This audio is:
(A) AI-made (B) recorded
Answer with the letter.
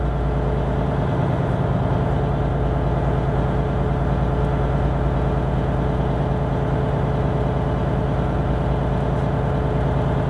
B